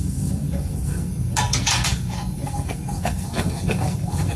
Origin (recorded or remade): remade